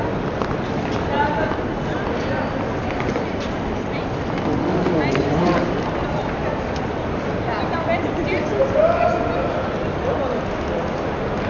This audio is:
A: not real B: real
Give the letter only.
B